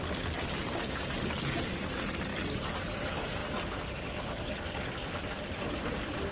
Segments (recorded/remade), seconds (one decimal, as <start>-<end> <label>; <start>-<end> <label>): 0.0-2.3 recorded; 2.3-2.9 remade; 2.9-6.3 recorded